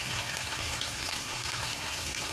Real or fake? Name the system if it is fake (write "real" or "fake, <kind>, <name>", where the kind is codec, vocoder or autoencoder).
fake, codec, SNAC